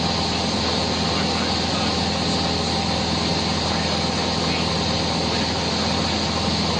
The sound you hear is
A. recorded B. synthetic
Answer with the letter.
A